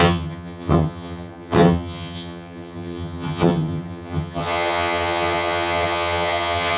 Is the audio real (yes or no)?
no